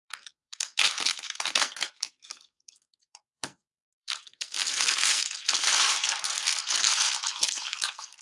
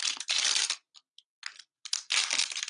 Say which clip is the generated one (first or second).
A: first